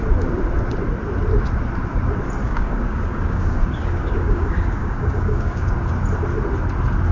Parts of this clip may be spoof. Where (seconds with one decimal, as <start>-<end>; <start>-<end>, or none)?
2.4-5.7